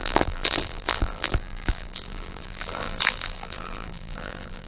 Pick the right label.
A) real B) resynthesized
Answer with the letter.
B